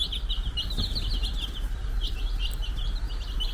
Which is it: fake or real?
real